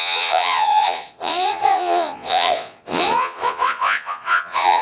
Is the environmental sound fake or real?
fake